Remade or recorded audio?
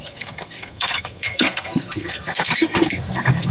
remade